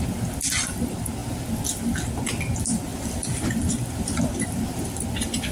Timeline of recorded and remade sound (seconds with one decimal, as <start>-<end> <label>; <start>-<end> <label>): 0.0-2.9 recorded; 2.9-4.6 remade; 4.6-5.5 recorded